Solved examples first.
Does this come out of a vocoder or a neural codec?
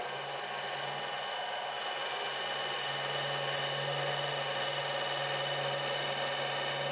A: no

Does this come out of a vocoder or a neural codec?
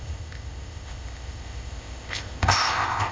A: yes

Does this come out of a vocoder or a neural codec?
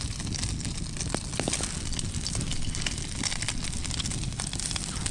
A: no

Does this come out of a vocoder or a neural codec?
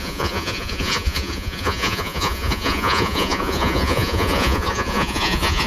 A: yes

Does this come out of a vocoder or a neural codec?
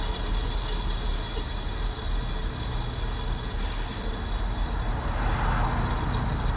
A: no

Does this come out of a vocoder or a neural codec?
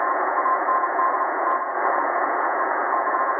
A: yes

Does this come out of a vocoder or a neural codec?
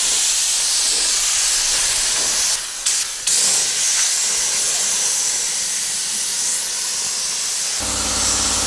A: no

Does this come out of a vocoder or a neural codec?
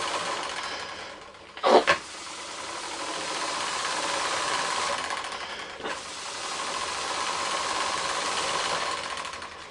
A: no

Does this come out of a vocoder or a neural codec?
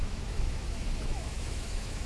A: yes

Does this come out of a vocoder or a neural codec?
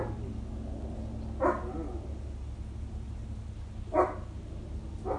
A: no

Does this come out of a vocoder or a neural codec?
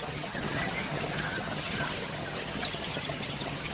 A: yes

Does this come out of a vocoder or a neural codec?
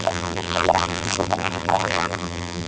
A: yes